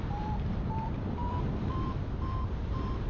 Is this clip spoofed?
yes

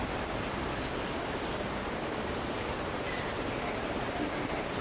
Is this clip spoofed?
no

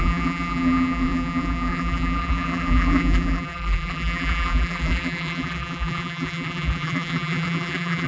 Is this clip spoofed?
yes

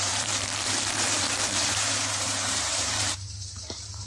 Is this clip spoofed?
yes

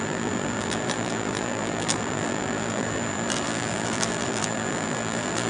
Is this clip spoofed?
yes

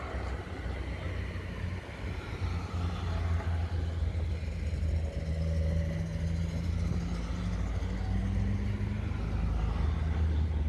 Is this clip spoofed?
no